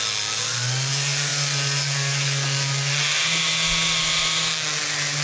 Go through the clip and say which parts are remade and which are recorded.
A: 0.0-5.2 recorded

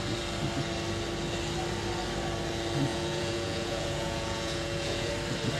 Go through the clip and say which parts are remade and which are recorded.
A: 0.0-2.9 recorded; 2.9-5.1 remade; 5.1-5.6 recorded